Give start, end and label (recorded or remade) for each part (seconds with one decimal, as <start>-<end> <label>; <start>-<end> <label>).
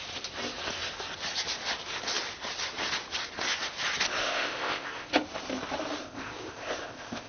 0.0-4.2 recorded; 4.2-5.1 remade; 5.1-6.0 recorded; 6.0-7.3 remade